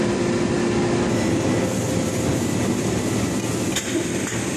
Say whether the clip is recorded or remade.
recorded